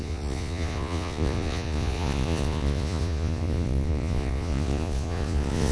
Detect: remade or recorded remade